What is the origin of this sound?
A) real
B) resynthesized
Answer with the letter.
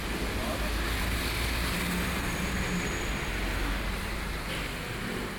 A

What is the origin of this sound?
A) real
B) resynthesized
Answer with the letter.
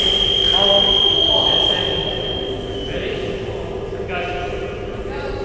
B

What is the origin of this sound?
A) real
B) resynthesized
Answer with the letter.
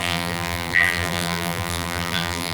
B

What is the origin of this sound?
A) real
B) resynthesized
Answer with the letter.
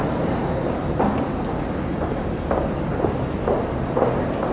A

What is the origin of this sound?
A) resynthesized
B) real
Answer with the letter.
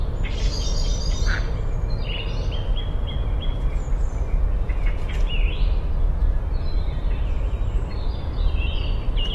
B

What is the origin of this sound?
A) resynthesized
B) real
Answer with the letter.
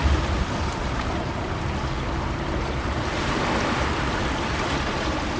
A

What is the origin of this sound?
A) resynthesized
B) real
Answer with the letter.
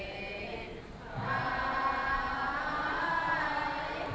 A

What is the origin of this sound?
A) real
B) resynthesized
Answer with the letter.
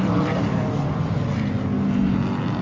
A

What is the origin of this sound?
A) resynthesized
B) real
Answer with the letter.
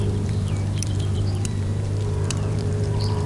A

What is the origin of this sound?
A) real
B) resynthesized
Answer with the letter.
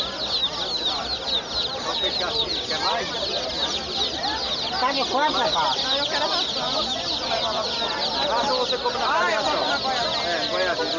A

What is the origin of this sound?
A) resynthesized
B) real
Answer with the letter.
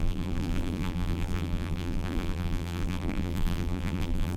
A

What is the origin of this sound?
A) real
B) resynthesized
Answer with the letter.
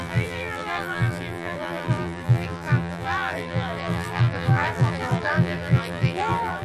B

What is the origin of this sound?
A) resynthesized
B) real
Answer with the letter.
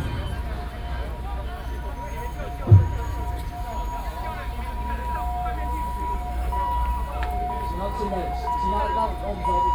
B